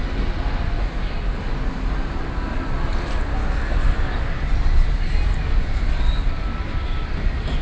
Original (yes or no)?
yes